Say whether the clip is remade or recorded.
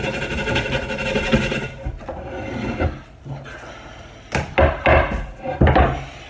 recorded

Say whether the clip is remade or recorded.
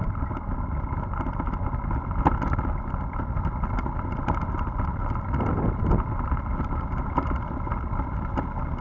recorded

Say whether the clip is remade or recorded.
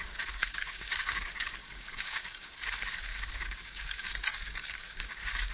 remade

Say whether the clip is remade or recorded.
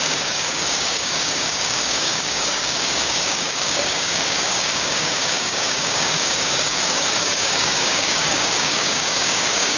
remade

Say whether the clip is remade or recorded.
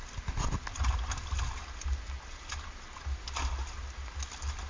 recorded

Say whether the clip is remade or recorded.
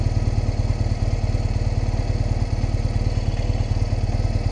recorded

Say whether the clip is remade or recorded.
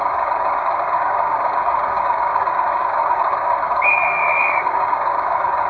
remade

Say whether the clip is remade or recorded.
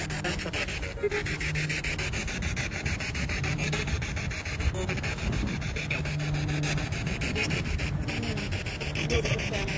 recorded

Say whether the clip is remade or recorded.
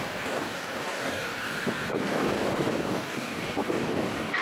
remade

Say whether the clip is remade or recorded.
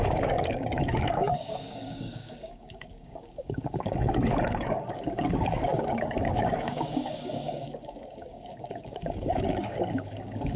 remade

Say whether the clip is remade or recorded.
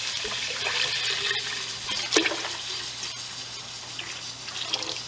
recorded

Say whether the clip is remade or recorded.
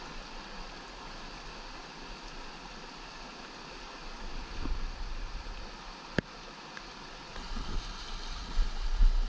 recorded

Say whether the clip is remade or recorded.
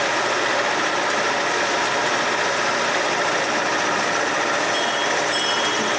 recorded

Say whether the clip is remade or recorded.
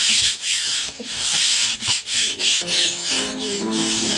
remade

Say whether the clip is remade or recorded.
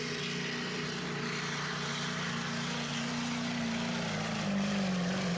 recorded